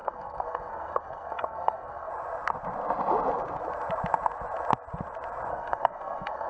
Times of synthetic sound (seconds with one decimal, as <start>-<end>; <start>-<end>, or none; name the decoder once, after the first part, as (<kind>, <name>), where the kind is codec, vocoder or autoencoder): 0.0-2.1 (codec, SNAC); 5.5-6.5